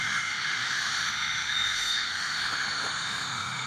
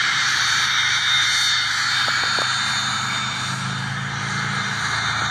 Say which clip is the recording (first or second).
second